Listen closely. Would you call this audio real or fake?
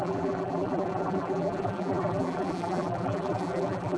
fake